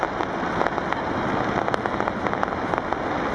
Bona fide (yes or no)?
yes